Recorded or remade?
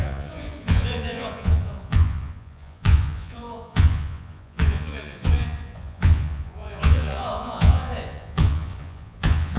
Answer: remade